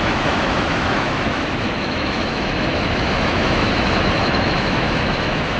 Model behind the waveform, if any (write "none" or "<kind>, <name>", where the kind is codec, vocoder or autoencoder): autoencoder, DAC-VAE